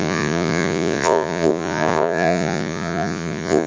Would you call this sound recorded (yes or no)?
no